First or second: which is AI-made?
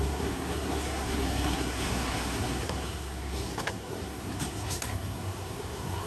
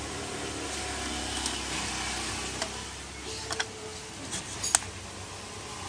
first